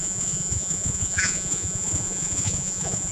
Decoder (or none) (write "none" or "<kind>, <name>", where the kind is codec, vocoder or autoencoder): vocoder, Vocos